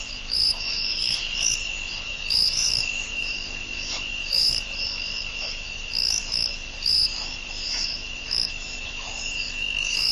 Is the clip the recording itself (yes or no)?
no